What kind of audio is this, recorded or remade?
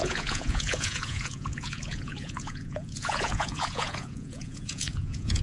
remade